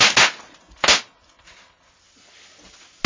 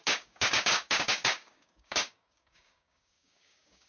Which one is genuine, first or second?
first